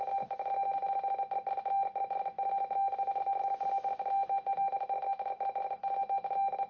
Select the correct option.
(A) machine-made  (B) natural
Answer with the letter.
B